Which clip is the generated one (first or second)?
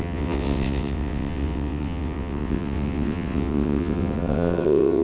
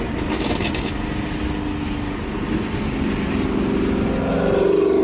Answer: first